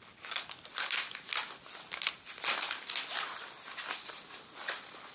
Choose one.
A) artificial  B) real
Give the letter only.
B